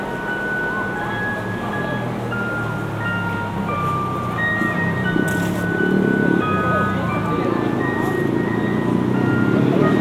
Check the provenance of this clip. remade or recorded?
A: recorded